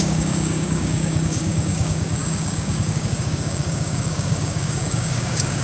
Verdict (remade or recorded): remade